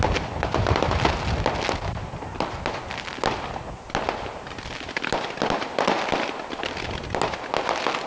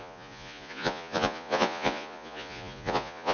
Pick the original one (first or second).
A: first